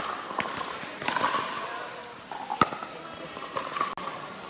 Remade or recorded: recorded